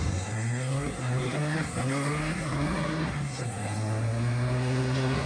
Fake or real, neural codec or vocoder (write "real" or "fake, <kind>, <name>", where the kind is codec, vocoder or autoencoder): fake, codec, SNAC